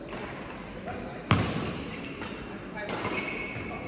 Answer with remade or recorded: recorded